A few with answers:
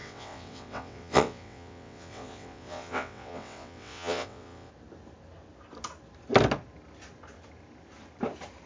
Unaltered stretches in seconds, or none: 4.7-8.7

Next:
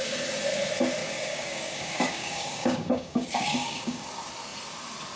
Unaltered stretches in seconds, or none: 0.0-1.0; 4.1-5.2

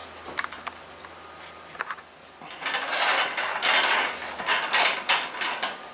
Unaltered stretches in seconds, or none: 0.0-5.9